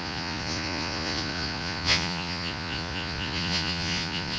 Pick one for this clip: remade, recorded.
remade